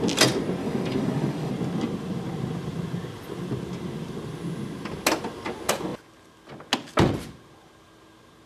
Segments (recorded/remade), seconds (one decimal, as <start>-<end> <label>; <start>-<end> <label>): 0.0-0.6 recorded; 0.6-1.5 remade; 1.5-8.5 recorded